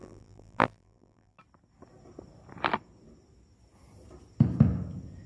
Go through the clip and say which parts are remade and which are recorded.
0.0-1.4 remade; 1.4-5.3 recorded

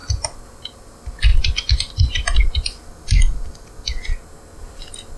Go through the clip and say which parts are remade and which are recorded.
0.0-5.2 remade

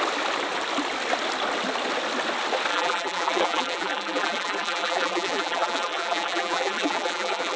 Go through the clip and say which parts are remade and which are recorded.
0.0-2.7 recorded; 2.7-7.6 remade

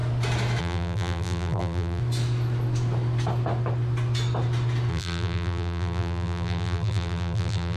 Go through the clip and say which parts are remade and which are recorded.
0.0-0.6 recorded; 0.6-2.0 remade; 2.0-4.9 recorded; 4.9-7.8 remade

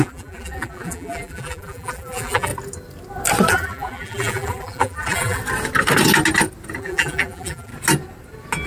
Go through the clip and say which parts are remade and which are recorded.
0.0-2.5 remade; 2.5-3.5 recorded; 3.5-5.4 remade; 5.4-6.8 recorded; 6.8-7.7 remade; 7.7-8.7 recorded

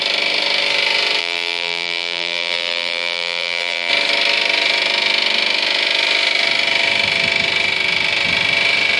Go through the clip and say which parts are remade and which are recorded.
0.0-1.2 recorded; 1.2-3.9 remade; 3.9-9.0 recorded